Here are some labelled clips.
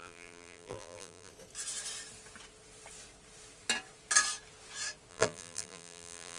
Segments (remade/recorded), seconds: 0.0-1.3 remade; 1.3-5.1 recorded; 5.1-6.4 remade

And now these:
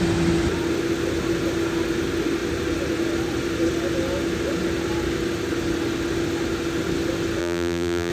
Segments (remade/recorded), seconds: 0.0-7.4 recorded; 7.4-8.1 remade

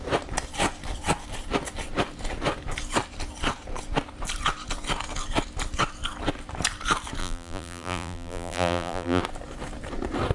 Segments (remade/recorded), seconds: 0.0-7.2 recorded; 7.2-9.2 remade; 9.2-10.3 recorded